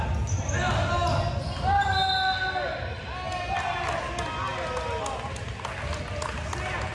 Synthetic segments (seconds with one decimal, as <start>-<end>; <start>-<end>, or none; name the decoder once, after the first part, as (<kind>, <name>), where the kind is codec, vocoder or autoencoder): none